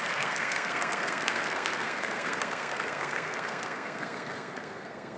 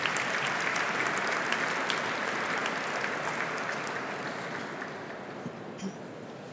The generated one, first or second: first